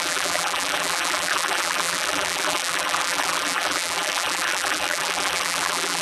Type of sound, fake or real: fake